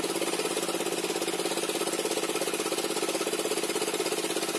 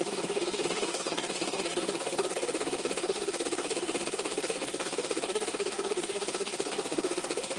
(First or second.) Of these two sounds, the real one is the first